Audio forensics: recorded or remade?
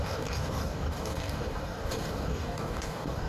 remade